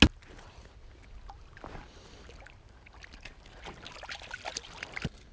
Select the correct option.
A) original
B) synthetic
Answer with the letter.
A